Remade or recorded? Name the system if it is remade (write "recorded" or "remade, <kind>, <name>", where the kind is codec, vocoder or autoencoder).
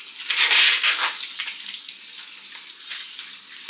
recorded